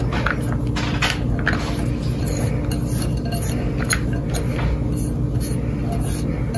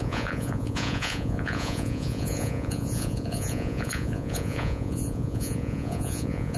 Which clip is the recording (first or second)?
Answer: first